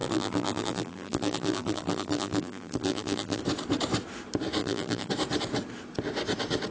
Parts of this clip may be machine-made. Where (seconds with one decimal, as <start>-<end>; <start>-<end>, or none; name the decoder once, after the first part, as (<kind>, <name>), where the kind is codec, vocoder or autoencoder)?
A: 0.0-3.4 (vocoder, BigVGAN v2); 4.6-5.1